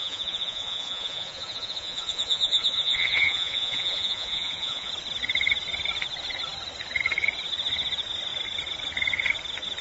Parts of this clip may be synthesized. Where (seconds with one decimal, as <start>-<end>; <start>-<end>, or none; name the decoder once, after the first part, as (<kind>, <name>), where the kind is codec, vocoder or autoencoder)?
0.0-4.9 (vocoder, Vocos)